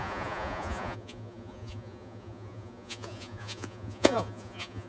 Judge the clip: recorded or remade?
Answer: remade